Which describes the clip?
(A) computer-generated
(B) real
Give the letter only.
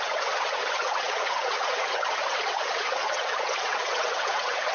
A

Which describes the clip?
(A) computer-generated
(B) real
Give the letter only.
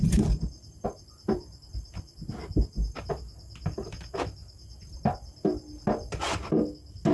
B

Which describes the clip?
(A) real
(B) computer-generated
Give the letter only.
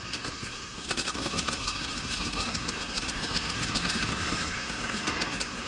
B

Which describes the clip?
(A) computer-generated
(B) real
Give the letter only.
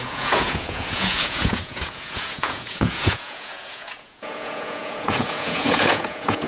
A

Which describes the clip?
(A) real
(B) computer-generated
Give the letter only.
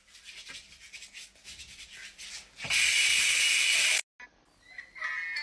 A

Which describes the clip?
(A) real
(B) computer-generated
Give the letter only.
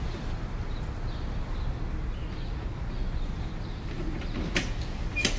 A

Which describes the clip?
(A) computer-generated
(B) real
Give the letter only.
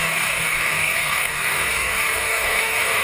A